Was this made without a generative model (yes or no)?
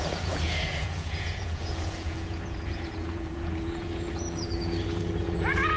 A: no